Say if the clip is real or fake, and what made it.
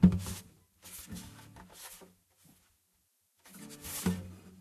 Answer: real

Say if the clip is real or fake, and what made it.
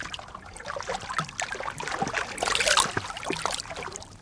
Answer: real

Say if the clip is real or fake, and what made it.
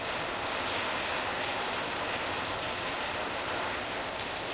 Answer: fake, vocoder, BigVGAN v2